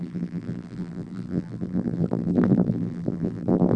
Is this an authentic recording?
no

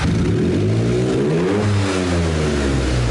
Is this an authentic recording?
yes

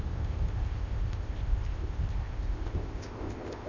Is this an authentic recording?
no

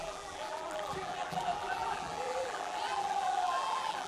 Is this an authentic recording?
no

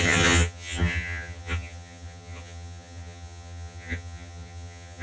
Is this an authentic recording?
no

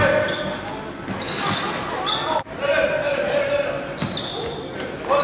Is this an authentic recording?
yes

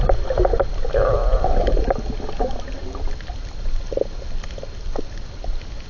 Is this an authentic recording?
yes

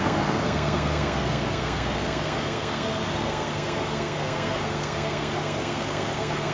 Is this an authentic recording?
no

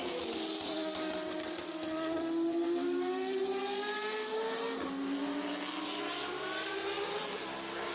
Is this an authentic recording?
yes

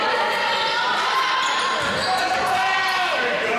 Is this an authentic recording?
yes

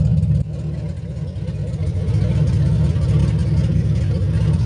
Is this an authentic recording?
yes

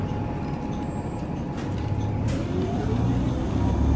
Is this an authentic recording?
yes